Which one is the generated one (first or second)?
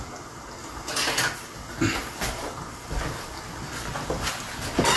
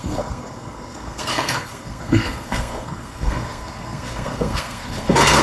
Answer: second